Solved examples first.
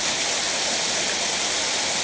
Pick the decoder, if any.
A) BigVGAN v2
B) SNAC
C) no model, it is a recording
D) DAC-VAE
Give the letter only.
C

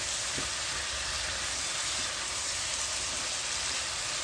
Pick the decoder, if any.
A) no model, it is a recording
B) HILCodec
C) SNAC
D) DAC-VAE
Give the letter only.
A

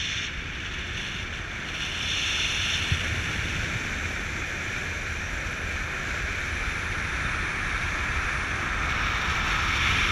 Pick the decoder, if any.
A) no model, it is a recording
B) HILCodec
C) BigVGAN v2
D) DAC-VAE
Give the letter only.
A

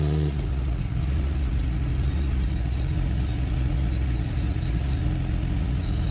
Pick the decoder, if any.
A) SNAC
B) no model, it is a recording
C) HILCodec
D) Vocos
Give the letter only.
D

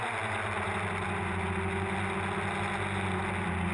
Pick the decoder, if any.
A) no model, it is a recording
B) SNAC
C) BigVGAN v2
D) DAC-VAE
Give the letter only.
A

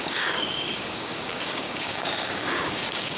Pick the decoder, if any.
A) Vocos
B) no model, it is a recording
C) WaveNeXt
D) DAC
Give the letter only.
D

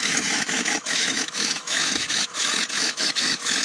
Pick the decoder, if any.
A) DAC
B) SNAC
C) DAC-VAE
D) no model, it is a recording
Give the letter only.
C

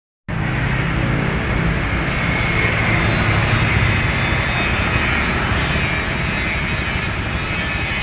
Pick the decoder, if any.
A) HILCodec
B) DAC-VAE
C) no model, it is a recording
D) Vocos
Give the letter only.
C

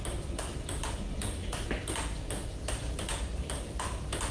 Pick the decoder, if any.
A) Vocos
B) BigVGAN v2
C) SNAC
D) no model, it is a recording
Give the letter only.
D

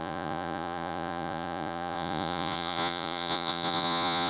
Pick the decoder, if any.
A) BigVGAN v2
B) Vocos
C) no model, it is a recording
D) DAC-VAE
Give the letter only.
B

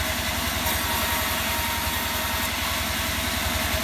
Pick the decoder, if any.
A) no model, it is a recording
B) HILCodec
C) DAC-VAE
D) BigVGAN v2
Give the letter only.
A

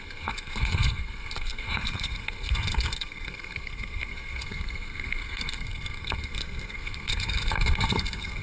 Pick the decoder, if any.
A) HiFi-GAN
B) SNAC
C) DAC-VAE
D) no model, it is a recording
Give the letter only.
B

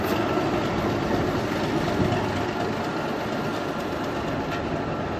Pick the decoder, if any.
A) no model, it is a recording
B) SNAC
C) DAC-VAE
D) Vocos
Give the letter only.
A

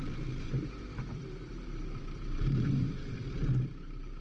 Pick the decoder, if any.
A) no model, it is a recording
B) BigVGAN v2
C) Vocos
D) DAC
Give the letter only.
B